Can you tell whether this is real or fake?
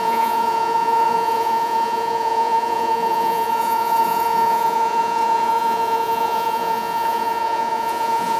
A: fake